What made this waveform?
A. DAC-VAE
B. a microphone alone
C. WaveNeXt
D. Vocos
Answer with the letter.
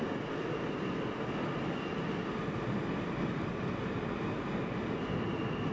B